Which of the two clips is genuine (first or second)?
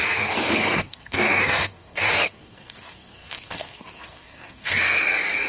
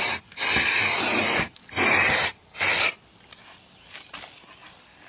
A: second